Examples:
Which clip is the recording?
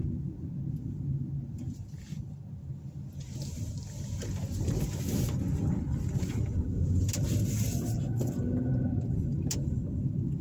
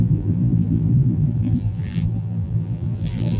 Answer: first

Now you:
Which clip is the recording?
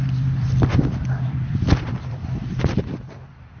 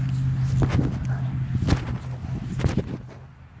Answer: second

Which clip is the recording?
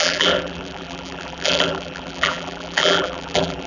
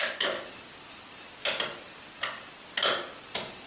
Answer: second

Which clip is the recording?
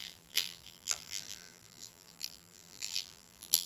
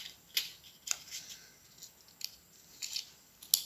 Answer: second